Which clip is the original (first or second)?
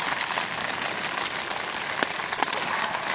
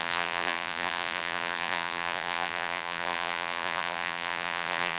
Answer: first